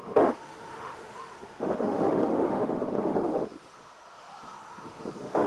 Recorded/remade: remade